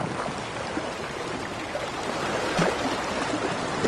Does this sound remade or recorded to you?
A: recorded